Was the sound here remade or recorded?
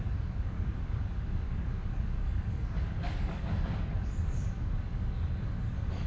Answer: remade